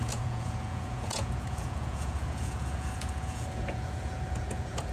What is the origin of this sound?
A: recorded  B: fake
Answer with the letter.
B